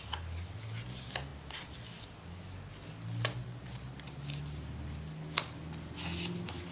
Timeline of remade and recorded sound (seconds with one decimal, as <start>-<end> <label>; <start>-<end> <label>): 0.0-3.4 recorded; 3.4-4.0 remade; 4.0-6.7 recorded